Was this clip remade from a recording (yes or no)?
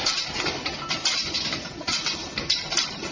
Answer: yes